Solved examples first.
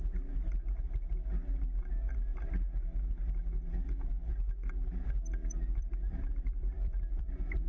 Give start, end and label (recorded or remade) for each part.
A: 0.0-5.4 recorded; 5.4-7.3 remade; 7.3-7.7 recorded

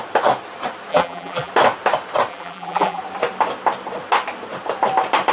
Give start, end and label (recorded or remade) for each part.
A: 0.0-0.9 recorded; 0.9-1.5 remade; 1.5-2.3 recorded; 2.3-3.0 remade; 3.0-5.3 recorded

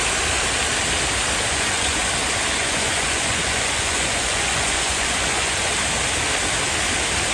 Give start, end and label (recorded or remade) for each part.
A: 0.0-1.5 recorded; 1.5-2.1 remade; 2.1-2.6 recorded; 2.6-5.7 remade; 5.7-7.3 recorded